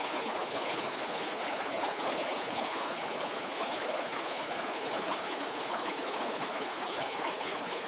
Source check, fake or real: fake